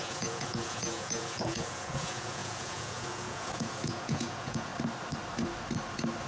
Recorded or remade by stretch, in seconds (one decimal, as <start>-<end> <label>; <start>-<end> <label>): 0.0-4.7 remade; 4.7-6.3 recorded